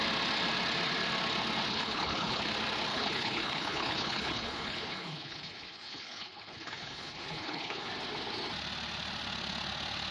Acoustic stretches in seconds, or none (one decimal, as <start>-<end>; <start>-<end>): 0.0-1.7; 2.4-2.9; 7.9-10.1

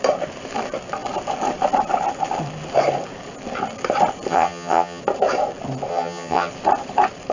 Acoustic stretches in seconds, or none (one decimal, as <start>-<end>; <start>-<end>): 0.0-4.3; 5.0-5.9; 6.5-7.3

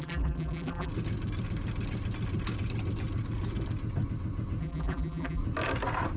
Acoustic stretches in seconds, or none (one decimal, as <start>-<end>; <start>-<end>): 0.9-4.6; 5.4-6.2

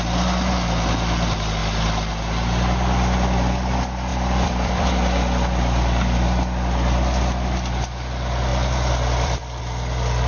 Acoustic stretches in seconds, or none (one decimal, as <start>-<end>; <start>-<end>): 0.0-1.6; 2.1-4.1; 4.9-8.5; 9.6-10.3